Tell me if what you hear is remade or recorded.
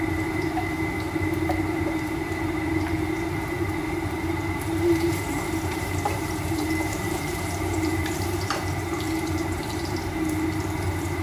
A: remade